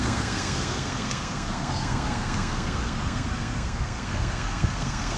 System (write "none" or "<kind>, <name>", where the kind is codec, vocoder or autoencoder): codec, SNAC